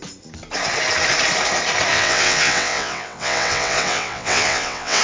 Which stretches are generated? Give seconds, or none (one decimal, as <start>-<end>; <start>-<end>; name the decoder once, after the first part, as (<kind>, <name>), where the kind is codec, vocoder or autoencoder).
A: 1.9-5.0 (vocoder, WaveNeXt)